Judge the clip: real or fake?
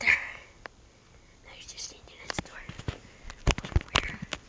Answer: real